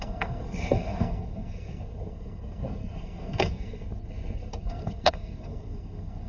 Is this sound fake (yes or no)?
yes